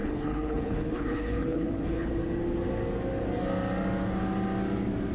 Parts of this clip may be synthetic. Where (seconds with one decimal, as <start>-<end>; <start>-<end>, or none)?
0.0-2.1